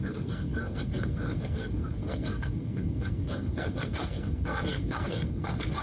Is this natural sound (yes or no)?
no